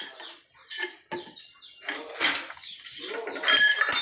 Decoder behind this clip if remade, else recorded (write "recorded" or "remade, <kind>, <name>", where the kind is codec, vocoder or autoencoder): recorded